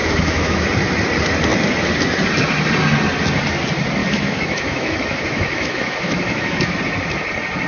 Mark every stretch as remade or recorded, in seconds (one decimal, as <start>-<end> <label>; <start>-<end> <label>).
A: 0.0-0.6 remade; 0.6-4.0 recorded; 4.0-6.8 remade; 6.8-7.7 recorded